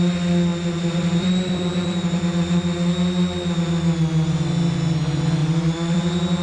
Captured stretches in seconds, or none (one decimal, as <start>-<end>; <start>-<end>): 0.0-0.5; 2.6-5.4; 6.0-6.4